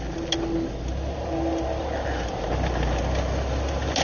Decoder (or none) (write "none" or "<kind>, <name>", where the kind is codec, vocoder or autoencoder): none